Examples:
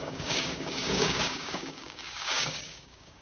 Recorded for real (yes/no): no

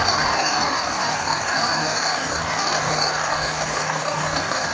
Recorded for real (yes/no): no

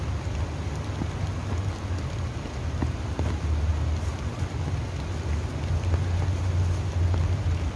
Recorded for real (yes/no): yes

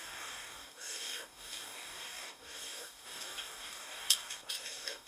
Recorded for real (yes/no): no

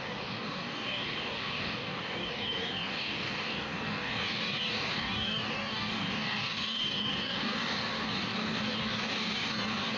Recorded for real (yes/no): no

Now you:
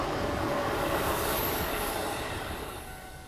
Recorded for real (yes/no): no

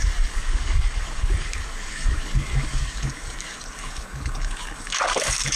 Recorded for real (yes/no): no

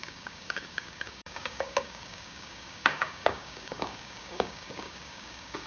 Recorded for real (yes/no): no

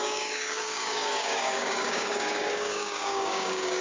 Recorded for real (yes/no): no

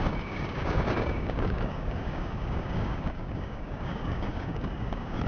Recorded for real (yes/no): no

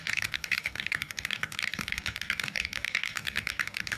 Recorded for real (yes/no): no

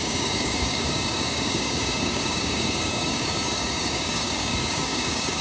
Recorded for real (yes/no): no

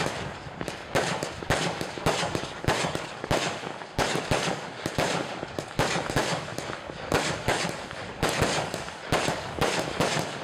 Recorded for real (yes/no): no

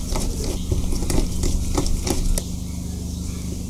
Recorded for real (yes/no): yes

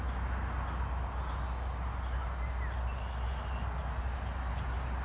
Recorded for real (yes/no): yes